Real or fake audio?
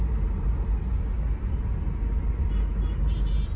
real